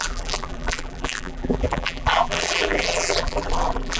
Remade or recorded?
remade